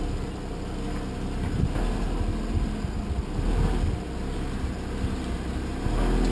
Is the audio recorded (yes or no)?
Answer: yes